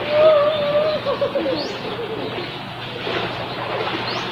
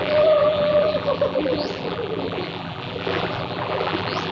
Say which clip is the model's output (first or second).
second